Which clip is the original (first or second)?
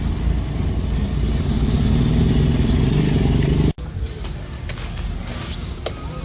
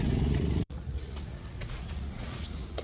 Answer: first